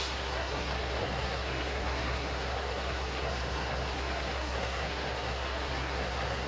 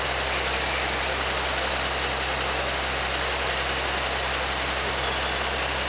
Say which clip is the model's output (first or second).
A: first